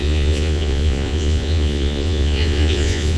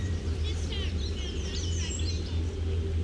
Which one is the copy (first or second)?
first